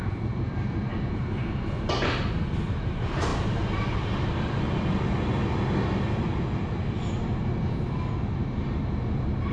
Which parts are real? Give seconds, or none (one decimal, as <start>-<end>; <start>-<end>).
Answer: 0.9-2.3; 3.3-8.1